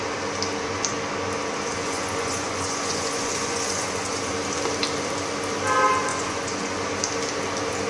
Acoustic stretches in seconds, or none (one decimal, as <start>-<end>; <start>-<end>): 0.0-1.8; 4.2-6.1; 6.8-7.9